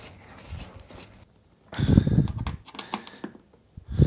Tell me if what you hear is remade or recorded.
recorded